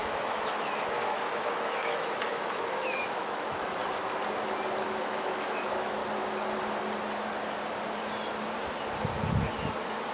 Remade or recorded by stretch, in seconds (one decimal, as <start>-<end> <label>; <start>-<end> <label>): 0.0-3.8 remade; 3.8-5.0 recorded; 5.0-6.0 remade; 6.0-10.1 recorded

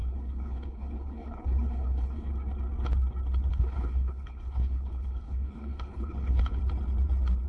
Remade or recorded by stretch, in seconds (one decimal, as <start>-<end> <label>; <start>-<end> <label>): 0.0-2.3 remade; 2.3-3.5 recorded; 3.5-6.6 remade; 6.6-7.5 recorded

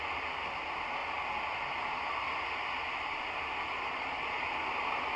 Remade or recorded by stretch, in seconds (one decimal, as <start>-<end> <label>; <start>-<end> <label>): 0.0-5.2 recorded